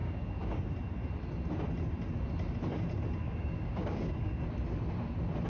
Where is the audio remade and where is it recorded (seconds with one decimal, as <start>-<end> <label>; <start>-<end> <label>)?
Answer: 0.0-0.7 remade; 0.7-3.2 recorded; 3.2-4.4 remade; 4.4-5.5 recorded